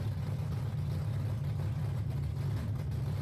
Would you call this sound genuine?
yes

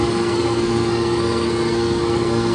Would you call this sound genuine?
no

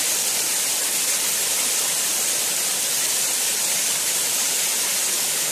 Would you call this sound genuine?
yes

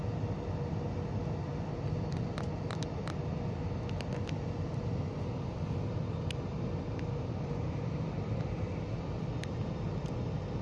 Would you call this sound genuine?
yes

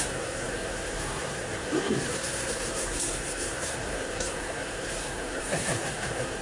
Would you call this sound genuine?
no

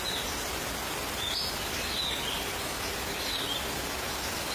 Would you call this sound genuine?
yes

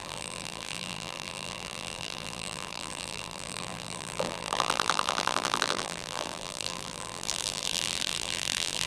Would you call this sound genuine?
no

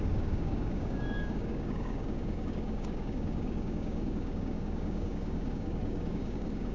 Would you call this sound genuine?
no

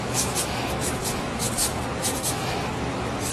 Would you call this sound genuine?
no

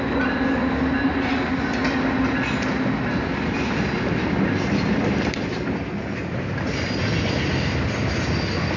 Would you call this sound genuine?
yes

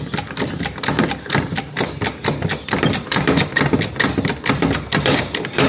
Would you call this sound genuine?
yes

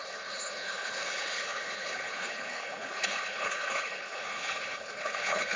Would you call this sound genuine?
no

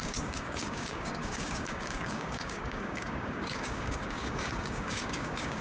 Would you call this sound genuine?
no